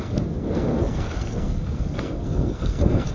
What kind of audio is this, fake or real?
fake